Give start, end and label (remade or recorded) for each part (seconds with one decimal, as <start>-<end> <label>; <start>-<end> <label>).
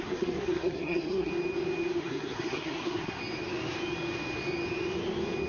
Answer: 0.0-1.3 remade; 1.3-2.0 recorded; 2.0-3.2 remade; 3.2-5.5 recorded